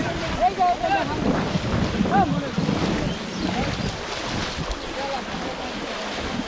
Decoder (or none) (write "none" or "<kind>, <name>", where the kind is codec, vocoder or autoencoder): none